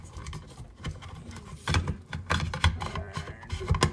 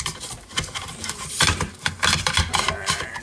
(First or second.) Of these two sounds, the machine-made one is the second